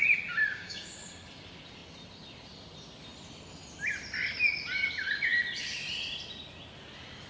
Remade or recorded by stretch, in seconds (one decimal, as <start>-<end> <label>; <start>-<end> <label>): 0.0-0.5 recorded; 0.5-1.0 remade; 1.0-7.3 recorded